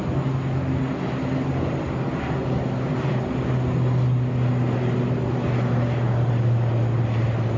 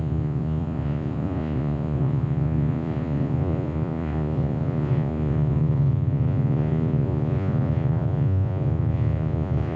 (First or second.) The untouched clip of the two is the first